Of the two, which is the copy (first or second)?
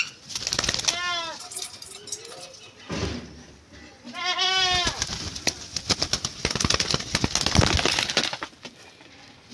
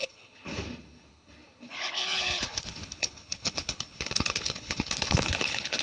second